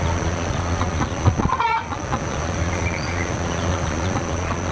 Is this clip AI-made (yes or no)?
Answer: yes